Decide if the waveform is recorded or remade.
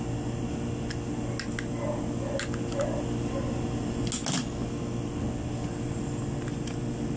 recorded